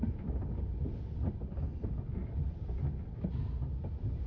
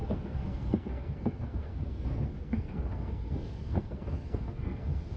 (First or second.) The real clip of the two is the first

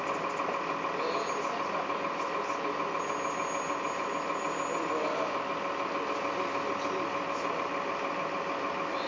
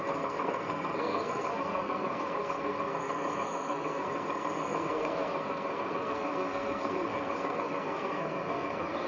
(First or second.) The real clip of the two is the first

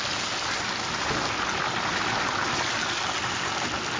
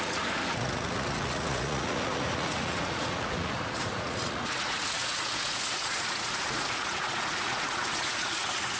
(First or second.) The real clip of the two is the first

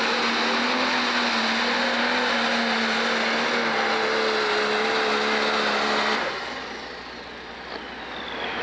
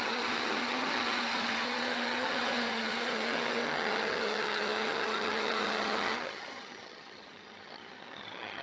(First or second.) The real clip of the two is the first